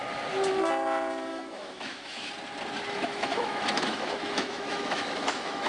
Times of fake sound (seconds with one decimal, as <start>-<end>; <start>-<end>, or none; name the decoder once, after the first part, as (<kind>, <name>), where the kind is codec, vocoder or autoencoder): 1.3-2.3 (autoencoder, DAC-VAE); 3.0-5.7